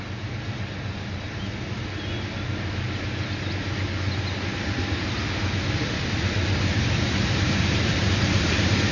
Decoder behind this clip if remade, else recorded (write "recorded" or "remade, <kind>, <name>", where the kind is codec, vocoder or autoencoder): recorded